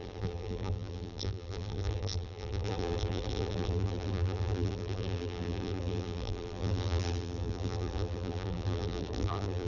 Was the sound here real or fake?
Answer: fake